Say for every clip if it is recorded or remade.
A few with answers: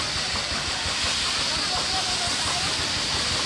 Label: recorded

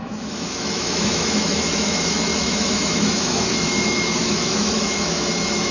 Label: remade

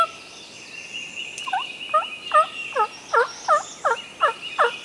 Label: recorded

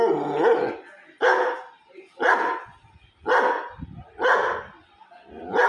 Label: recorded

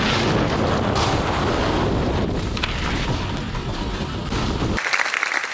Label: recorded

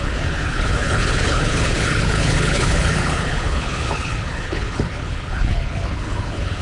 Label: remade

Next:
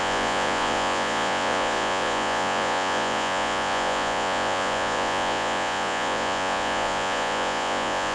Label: remade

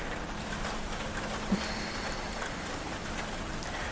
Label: recorded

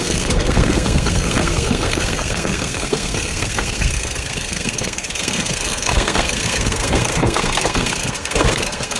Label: remade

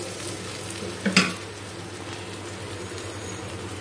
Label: recorded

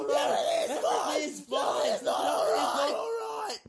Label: recorded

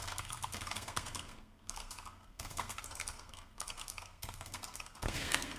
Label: remade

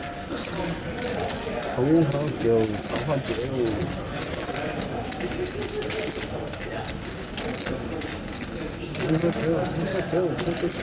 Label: recorded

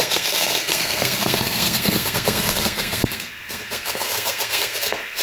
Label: remade